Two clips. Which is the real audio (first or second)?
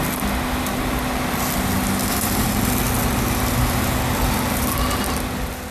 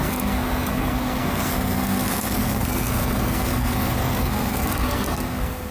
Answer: first